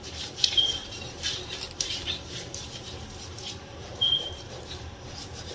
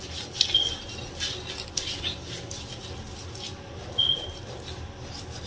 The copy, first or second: first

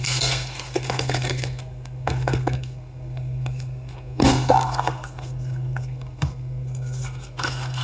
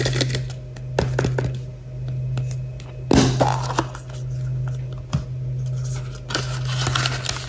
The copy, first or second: first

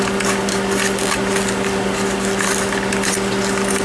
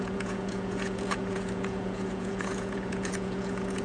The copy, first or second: second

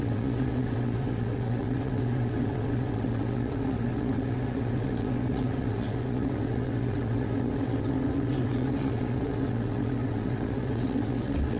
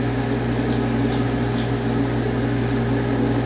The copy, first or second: first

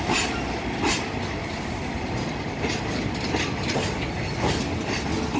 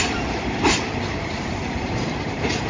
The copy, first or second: second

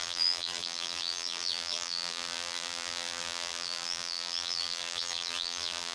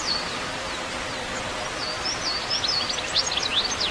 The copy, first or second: first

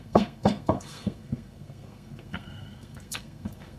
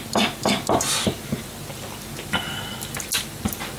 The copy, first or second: first